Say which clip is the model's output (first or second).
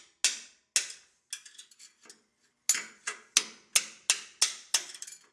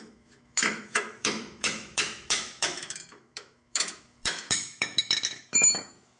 second